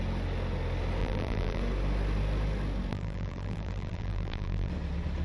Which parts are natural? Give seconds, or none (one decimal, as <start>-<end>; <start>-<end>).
0.0-1.0; 1.6-2.9; 4.7-5.2